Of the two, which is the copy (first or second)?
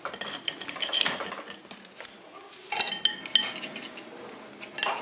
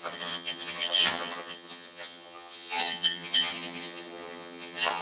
second